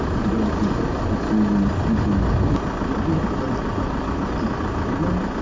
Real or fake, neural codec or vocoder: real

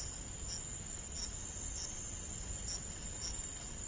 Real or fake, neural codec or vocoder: real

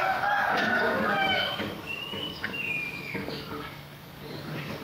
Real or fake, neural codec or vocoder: fake, codec, DAC